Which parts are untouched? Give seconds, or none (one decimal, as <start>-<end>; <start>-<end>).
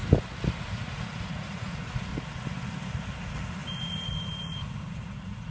0.0-0.6; 2.1-3.2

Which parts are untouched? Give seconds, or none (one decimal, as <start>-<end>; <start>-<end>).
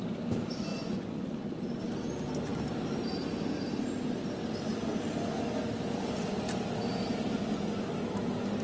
0.0-0.7; 1.4-8.6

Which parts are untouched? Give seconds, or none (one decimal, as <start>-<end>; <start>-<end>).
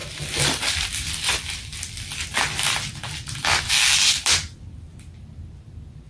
0.0-6.1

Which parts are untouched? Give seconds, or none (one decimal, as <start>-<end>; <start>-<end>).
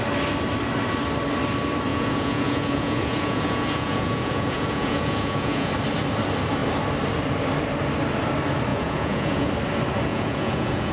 0.0-1.9; 5.7-8.7; 9.5-10.1